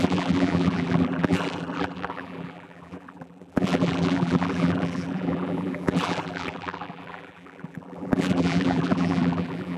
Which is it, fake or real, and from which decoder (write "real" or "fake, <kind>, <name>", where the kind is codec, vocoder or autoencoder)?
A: fake, vocoder, BigVGAN v2